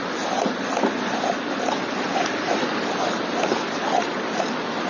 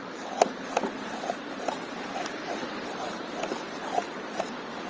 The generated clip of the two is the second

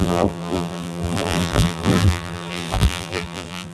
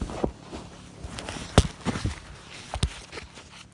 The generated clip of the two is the first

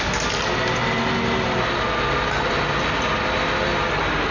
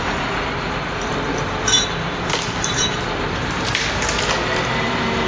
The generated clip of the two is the second